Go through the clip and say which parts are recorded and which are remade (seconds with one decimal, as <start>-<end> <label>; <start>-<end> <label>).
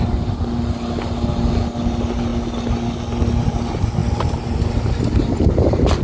0.0-6.0 recorded